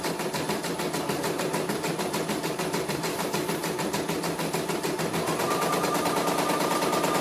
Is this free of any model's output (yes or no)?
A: no